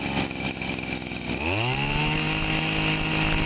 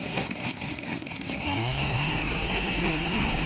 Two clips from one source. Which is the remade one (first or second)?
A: second